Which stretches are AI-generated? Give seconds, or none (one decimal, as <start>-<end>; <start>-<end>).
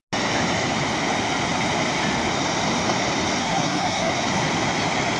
3.4-4.1